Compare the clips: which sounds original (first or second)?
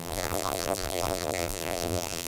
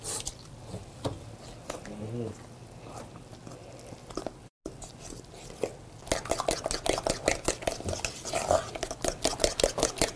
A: second